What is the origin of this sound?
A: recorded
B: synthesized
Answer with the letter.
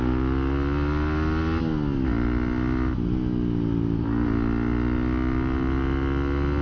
A